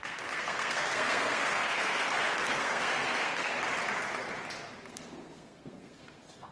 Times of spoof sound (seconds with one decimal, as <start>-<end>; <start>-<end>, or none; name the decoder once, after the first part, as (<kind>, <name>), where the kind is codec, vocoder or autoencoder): 0.0-3.6 (codec, SNAC); 4.9-6.5